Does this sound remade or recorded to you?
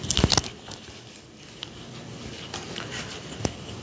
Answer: remade